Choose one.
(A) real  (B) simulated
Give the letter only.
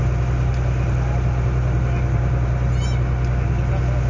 A